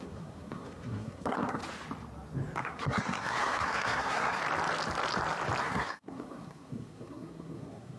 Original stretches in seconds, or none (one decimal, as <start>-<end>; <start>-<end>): 1.6-2.6; 4.4-5.6

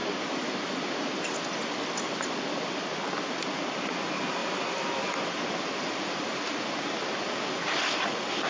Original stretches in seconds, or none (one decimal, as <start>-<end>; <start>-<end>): 0.0-8.5

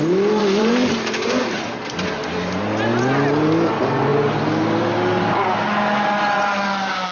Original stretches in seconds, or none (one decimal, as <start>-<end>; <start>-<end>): 0.0-0.4; 1.4-7.1

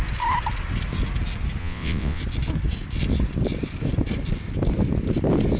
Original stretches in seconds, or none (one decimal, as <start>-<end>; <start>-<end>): 0.0-1.6; 2.2-5.6

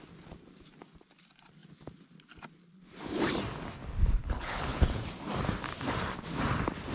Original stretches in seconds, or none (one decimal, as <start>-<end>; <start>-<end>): 0.0-4.2; 5.0-6.9